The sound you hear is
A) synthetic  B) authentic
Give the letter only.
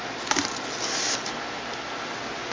B